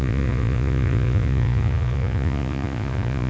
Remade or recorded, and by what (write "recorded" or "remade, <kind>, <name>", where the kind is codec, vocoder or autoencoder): remade, vocoder, Vocos